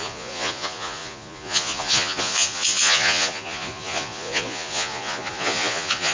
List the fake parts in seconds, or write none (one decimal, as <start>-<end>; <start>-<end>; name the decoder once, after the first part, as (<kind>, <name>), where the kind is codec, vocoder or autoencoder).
0.0-6.1 (vocoder, Vocos)